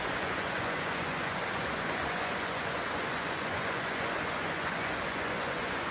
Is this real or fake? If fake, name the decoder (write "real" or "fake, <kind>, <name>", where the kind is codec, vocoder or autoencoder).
fake, vocoder, Vocos